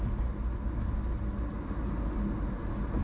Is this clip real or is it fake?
real